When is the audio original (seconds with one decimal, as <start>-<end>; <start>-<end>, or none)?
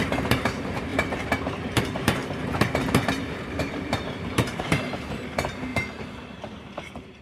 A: 2.2-3.6